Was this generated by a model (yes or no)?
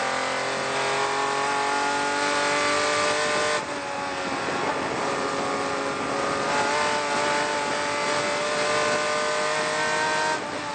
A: no